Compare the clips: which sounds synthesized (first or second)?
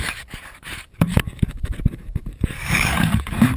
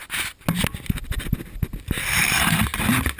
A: first